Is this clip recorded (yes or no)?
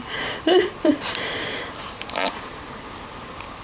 no